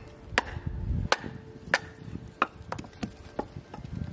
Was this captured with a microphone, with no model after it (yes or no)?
yes